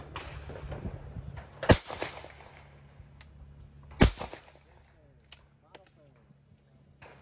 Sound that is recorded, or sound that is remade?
recorded